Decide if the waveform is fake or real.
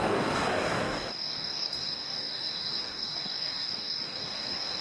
fake